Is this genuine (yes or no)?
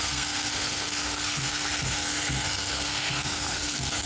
no